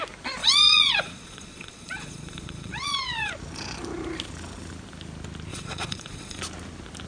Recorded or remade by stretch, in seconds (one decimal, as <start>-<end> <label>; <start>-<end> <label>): 0.0-0.4 recorded; 0.4-3.3 remade; 3.3-5.5 recorded; 5.5-6.4 remade; 6.4-7.1 recorded